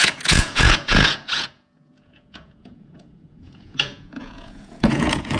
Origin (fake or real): fake